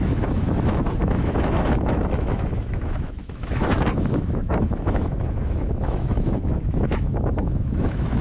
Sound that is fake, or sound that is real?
fake